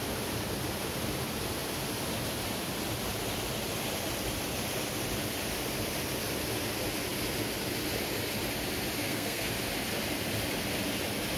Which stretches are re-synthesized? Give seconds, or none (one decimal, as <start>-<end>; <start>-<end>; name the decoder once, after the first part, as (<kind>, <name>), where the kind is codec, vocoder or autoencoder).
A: 9.0-9.5 (codec, SNAC)